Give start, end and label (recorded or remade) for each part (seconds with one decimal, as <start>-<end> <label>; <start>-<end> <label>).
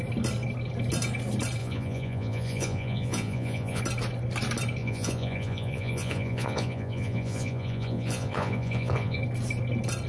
0.0-1.6 recorded; 1.6-3.8 remade; 3.8-4.8 recorded; 4.8-9.2 remade; 9.2-10.1 recorded